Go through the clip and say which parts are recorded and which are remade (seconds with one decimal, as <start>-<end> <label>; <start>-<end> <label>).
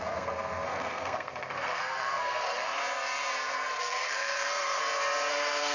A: 0.0-2.8 remade; 2.8-3.8 recorded; 3.8-4.8 remade; 4.8-5.3 recorded; 5.3-5.7 remade